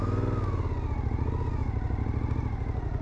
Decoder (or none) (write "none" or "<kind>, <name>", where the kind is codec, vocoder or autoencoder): none